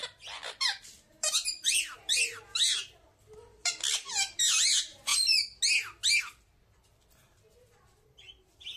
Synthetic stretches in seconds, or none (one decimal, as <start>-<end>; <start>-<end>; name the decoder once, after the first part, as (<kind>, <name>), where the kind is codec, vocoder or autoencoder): 0.0-5.1 (vocoder, BigVGAN v2); 6.2-8.8